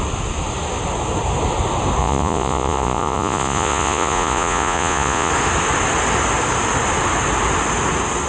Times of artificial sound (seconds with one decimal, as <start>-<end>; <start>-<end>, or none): 2.0-5.3